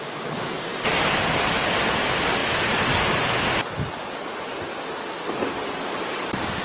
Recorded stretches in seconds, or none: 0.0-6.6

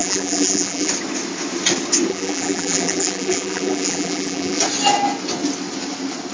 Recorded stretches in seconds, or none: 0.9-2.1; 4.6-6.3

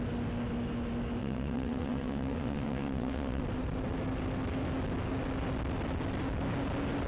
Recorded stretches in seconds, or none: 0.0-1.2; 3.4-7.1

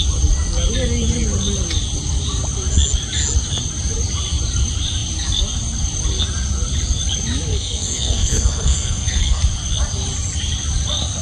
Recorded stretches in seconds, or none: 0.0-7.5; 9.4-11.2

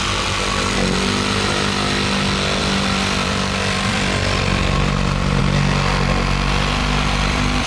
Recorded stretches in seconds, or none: 0.0-2.6; 5.4-6.8